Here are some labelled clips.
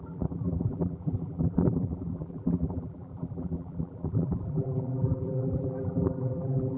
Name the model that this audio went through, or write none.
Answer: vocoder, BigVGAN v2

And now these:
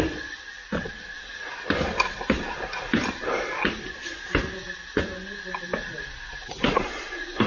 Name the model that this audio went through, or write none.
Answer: none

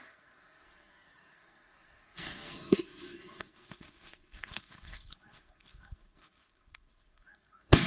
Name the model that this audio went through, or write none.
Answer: codec, SNAC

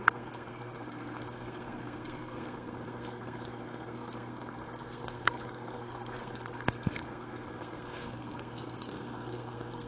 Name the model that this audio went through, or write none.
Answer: codec, SNAC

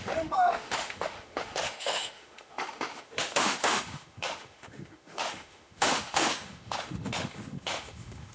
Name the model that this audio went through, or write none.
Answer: autoencoder, DAC-VAE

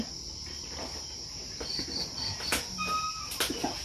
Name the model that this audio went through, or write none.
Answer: none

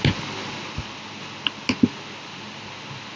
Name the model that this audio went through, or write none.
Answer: none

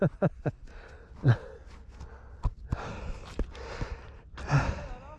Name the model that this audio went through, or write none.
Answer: none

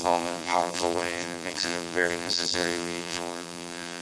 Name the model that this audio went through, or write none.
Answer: vocoder, BigVGAN v2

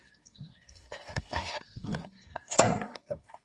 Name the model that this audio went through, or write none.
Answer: codec, SNAC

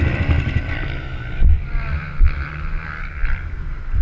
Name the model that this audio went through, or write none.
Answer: none